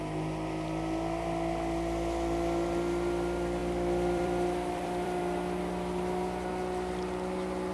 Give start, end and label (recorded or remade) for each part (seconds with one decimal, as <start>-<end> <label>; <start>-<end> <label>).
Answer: 0.0-3.6 recorded; 3.6-5.2 remade; 5.2-7.7 recorded